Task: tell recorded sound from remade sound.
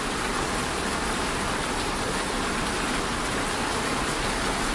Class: recorded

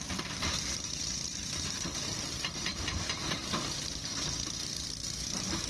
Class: remade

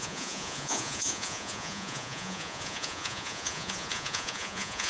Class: remade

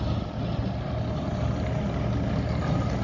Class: recorded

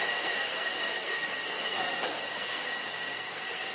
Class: remade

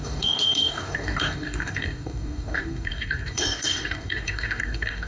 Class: remade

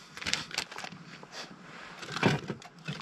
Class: recorded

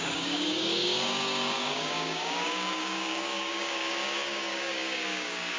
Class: remade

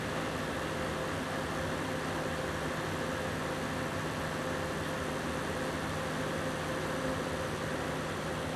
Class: recorded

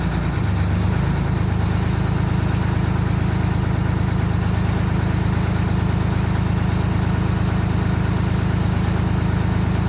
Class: recorded